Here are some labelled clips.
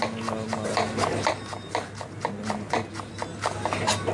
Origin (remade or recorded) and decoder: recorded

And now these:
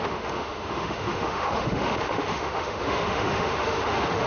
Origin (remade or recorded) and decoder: remade, autoencoder, DAC-VAE